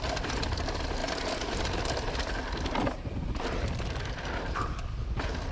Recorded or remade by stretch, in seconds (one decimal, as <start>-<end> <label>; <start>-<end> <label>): 0.0-5.5 recorded